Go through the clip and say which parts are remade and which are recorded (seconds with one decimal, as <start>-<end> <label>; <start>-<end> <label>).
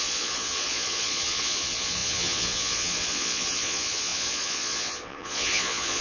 0.0-6.0 remade